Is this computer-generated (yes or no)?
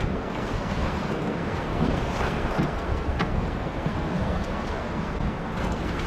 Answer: yes